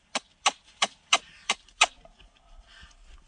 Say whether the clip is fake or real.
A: real